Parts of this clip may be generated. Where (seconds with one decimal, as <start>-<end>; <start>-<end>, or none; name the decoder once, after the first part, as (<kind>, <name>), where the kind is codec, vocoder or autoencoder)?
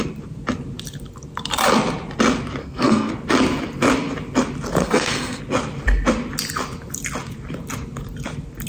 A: 2.6-3.1 (codec, SNAC); 4.8-5.4